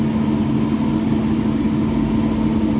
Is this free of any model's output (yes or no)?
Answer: yes